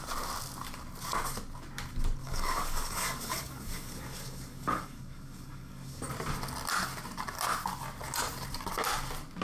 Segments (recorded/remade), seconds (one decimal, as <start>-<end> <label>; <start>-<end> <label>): 0.0-2.2 recorded; 2.2-6.1 remade; 6.1-9.4 recorded